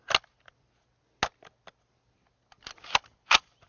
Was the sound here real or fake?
real